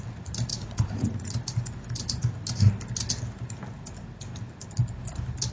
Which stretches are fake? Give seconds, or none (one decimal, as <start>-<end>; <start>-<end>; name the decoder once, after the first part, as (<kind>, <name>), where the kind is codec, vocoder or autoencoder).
0.5-1.3 (vocoder, Vocos)